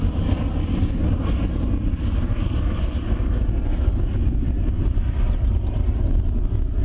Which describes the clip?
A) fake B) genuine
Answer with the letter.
B